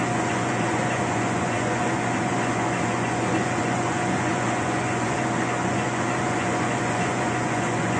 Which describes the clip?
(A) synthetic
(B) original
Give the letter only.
A